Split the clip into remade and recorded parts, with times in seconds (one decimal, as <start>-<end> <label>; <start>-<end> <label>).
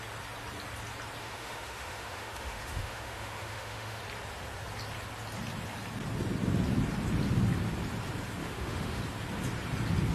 0.0-1.2 recorded; 1.2-4.0 remade; 4.0-8.4 recorded; 8.4-9.0 remade; 9.0-10.1 recorded